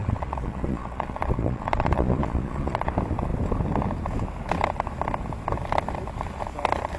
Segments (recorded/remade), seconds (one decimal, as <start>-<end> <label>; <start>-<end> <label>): 0.0-2.9 remade; 2.9-7.0 recorded

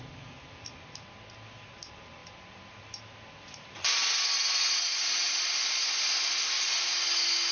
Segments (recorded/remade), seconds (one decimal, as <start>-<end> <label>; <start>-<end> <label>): 0.0-7.5 recorded

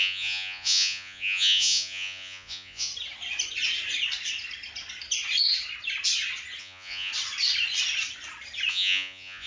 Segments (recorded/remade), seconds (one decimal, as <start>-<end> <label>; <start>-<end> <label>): 0.0-2.9 remade; 2.9-6.6 recorded; 6.6-7.1 remade; 7.1-8.7 recorded; 8.7-9.5 remade

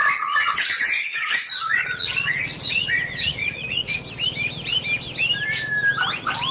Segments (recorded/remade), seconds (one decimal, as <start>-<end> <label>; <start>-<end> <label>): 0.0-3.9 remade; 3.9-6.5 recorded

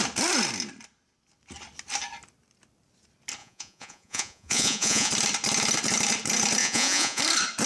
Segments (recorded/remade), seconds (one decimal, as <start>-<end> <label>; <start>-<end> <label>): 0.0-3.4 recorded; 3.4-5.1 remade; 5.1-6.6 recorded; 6.6-7.2 remade; 7.2-7.7 recorded

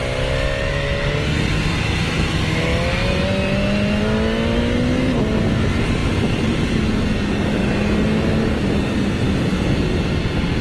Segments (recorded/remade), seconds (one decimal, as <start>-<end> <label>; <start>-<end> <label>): 0.0-10.6 recorded

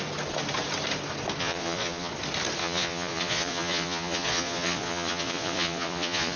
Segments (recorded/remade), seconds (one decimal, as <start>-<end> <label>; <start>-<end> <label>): 0.0-1.4 recorded; 1.4-2.1 remade; 2.1-2.6 recorded; 2.6-6.4 remade